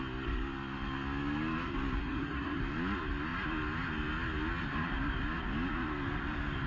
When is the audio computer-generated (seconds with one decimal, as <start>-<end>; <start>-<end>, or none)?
2.0-2.6